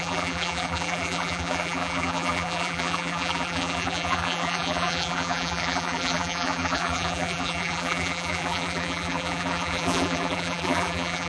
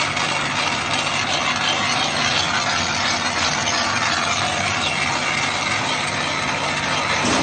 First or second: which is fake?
first